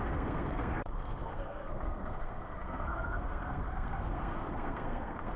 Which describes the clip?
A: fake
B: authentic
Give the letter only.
A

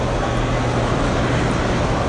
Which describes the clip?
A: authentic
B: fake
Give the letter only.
A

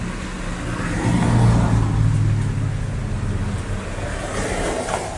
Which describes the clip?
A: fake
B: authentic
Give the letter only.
B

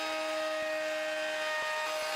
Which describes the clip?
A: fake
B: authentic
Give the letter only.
B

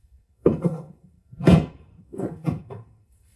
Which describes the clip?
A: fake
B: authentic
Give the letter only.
A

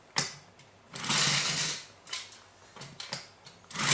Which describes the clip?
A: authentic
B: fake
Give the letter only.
A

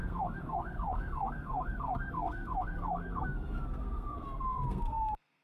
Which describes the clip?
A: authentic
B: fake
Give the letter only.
B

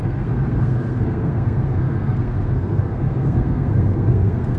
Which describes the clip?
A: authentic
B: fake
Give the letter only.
B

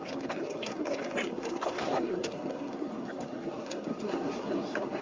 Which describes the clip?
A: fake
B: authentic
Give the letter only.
A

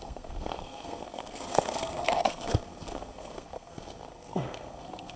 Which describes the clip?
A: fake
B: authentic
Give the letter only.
A